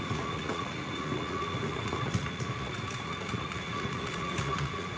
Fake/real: fake